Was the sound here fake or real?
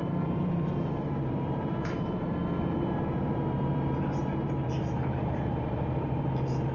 fake